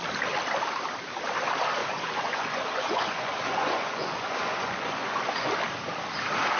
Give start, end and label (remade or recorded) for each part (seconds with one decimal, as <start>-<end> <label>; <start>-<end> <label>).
0.0-1.8 recorded; 1.8-5.5 remade; 5.5-6.6 recorded